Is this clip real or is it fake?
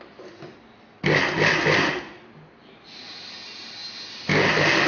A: real